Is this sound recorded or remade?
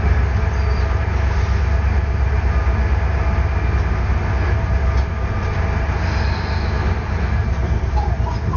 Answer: recorded